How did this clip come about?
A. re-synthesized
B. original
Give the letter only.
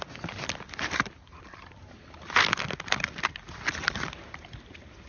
B